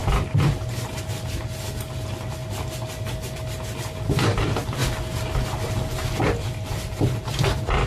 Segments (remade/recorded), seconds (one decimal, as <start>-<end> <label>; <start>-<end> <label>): 0.0-4.8 remade; 4.8-6.2 recorded; 6.2-7.9 remade